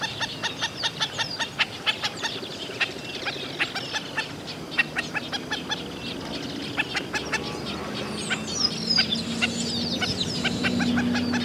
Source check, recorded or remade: recorded